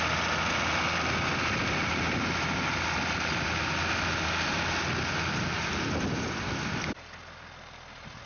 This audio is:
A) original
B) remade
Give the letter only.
A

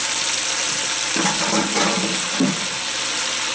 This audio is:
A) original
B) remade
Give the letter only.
A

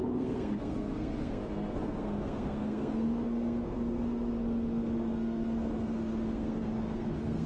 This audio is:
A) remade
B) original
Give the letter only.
A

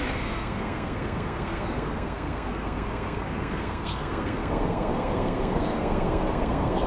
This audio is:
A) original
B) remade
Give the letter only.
B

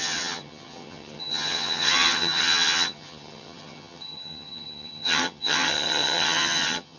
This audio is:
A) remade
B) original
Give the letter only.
A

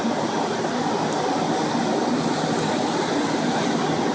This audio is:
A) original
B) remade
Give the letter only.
A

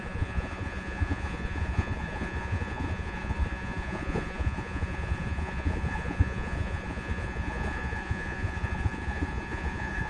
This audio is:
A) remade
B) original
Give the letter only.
A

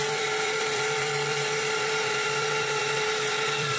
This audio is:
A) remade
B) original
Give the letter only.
A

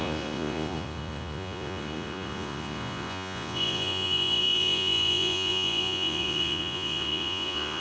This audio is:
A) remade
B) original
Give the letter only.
A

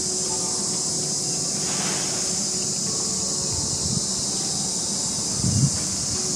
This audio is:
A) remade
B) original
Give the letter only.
B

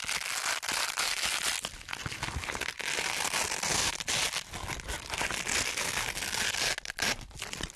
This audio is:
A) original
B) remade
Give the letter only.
A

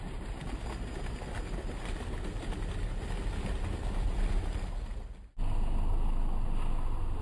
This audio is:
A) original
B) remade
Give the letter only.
A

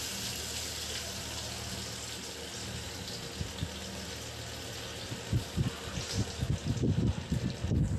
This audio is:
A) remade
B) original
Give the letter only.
B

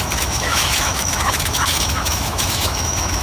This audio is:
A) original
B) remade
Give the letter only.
B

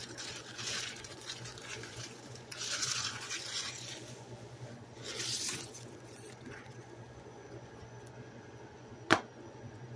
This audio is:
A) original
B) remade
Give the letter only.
B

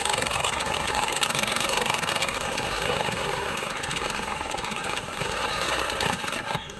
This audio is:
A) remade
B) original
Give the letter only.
A